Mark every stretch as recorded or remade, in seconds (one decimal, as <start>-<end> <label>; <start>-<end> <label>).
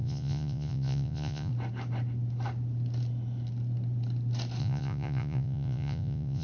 0.0-1.5 remade; 1.5-4.6 recorded; 4.6-6.4 remade